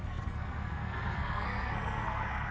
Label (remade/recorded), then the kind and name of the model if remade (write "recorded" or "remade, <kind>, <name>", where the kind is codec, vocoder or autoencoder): remade, codec, SNAC